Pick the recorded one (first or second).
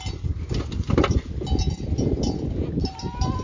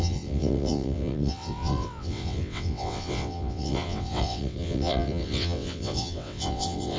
first